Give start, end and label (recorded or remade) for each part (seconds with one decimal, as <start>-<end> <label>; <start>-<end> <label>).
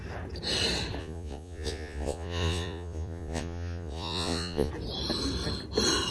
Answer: 0.0-1.0 recorded; 1.0-4.7 remade; 4.7-6.1 recorded